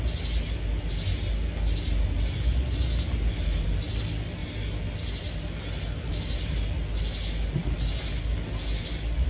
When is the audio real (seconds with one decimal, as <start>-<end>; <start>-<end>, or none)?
0.0-9.3